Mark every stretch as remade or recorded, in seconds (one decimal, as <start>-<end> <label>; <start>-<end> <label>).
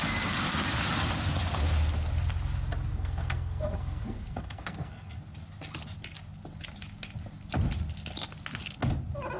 0.0-2.9 recorded; 2.9-5.2 remade; 5.2-9.4 recorded